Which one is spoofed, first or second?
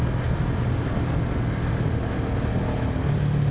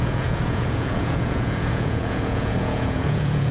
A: second